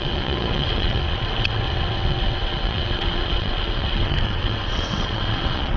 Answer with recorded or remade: remade